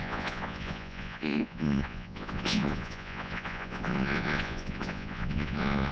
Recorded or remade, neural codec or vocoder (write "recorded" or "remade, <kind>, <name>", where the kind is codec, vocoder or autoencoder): remade, vocoder, Vocos